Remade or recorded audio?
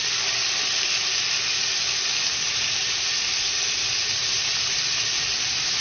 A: recorded